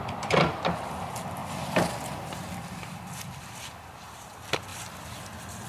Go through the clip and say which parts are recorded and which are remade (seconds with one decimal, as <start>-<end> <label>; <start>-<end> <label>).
0.0-1.4 recorded; 1.4-3.4 remade; 3.4-4.7 recorded; 4.7-5.2 remade; 5.2-5.7 recorded